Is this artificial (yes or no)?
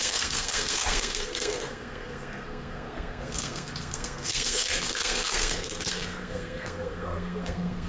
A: yes